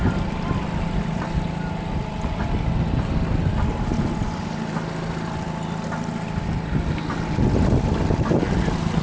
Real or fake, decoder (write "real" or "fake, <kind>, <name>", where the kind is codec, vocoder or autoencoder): real